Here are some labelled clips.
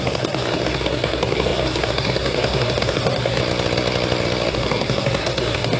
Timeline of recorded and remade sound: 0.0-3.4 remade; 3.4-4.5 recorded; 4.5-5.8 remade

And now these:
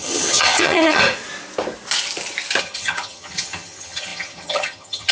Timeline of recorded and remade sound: 0.0-1.0 remade; 1.0-2.6 recorded; 2.6-5.1 remade

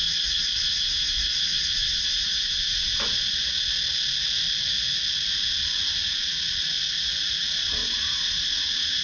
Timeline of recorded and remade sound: 0.0-2.1 remade; 2.1-7.8 recorded; 7.8-8.5 remade; 8.5-9.0 recorded

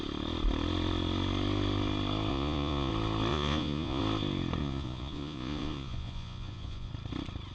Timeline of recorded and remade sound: 0.0-2.3 recorded; 2.3-2.9 remade; 2.9-3.3 recorded; 3.3-4.0 remade; 4.0-4.6 recorded; 4.6-6.9 remade; 6.9-7.5 recorded

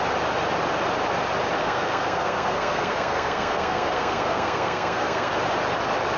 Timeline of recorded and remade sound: 0.0-1.6 recorded; 1.6-5.3 remade; 5.3-6.2 recorded

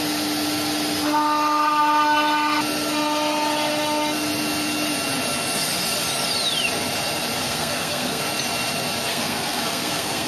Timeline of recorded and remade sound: 0.0-7.4 recorded; 7.4-8.2 remade; 8.2-9.1 recorded; 9.1-10.3 remade